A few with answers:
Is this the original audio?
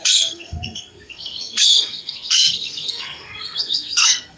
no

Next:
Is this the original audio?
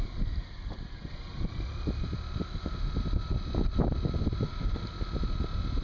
yes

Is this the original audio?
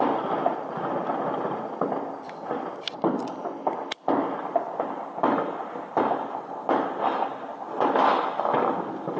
yes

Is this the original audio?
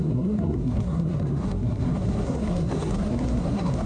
no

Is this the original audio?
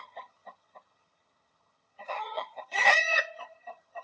no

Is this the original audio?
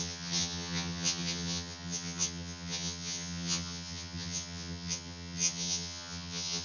no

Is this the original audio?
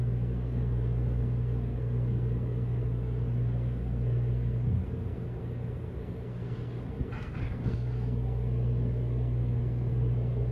no